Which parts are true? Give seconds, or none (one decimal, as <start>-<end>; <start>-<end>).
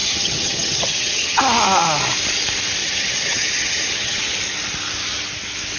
1.4-2.8; 4.2-5.8